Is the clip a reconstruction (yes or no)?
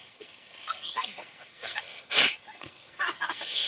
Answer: yes